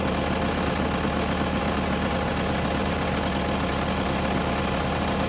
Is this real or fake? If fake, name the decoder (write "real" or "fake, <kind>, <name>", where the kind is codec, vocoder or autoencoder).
real